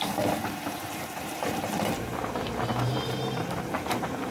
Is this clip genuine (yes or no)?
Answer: no